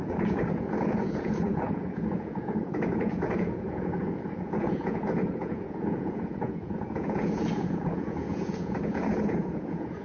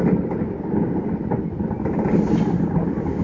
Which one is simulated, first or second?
first